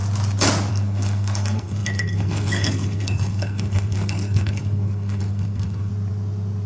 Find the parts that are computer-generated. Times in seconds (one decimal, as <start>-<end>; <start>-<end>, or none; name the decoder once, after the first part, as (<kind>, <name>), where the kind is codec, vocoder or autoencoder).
0.7-5.9 (codec, SNAC)